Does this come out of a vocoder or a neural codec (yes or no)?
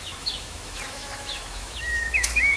yes